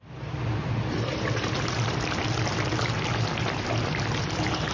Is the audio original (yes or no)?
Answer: no